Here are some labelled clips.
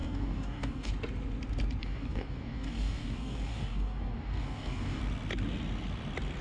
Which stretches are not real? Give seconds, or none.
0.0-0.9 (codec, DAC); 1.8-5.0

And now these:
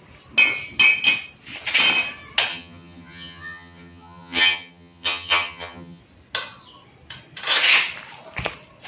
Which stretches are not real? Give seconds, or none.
2.5-6.0 (vocoder, HiFi-GAN)

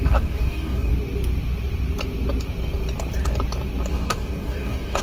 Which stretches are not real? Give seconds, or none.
0.0-0.9 (codec, DAC); 3.9-5.0

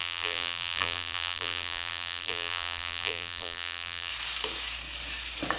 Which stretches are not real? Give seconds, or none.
0.0-4.1 (vocoder, BigVGAN v2)

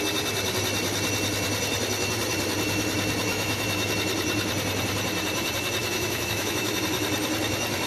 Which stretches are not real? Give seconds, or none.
3.3-3.9 (autoencoder, DAC-VAE); 5.8-6.8